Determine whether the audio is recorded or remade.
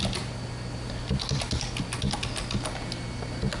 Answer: recorded